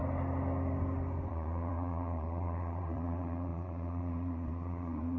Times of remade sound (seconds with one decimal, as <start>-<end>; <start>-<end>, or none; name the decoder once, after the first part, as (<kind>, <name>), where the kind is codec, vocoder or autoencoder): 1.3-5.2 (vocoder, Vocos)